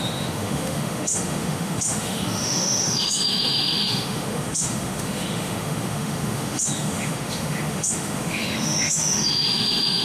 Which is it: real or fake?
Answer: fake